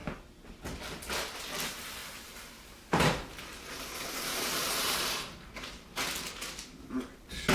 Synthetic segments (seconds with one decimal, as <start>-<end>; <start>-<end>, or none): 2.0-3.3; 4.3-6.0